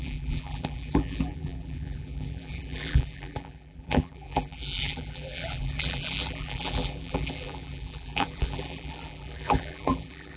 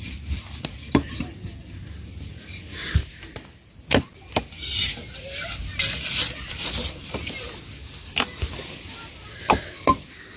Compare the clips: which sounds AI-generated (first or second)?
first